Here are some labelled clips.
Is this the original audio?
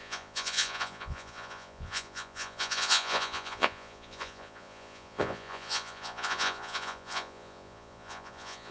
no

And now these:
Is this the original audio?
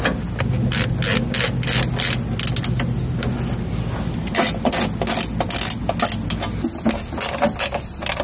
yes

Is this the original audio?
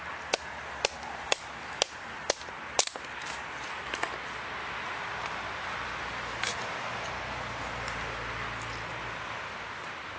yes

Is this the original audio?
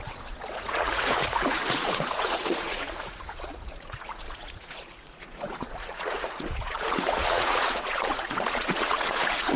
no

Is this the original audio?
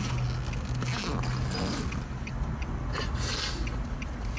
yes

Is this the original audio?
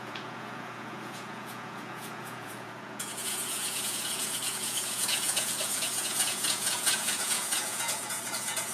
no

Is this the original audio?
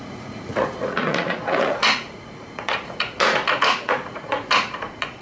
no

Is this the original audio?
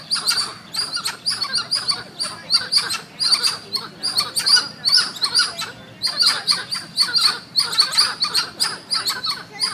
yes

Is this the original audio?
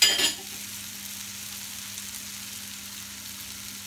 yes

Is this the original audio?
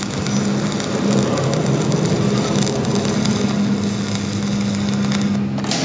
yes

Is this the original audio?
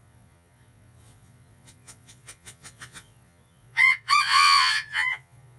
no